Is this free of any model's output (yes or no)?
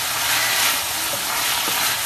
yes